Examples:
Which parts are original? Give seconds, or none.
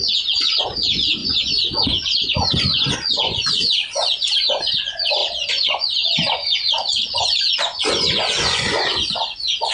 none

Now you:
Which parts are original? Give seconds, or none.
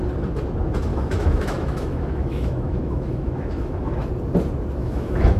0.0-0.9; 4.1-4.8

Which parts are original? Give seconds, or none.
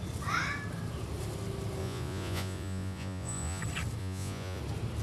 0.0-1.8; 3.6-4.0; 4.6-5.0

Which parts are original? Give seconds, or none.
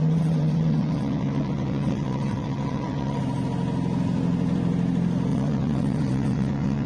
3.2-5.3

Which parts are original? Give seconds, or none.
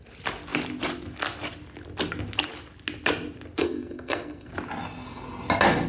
0.0-3.6; 4.5-5.9